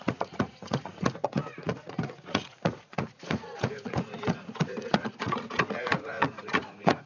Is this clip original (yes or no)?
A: no